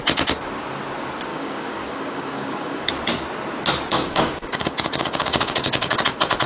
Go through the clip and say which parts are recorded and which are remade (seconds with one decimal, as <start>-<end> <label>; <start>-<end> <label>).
0.0-1.3 recorded; 1.3-2.9 remade; 2.9-3.9 recorded; 3.9-6.0 remade; 6.0-6.5 recorded